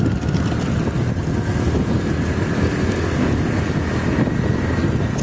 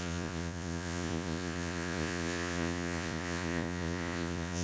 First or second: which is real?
first